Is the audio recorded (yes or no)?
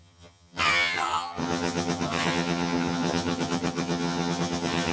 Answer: no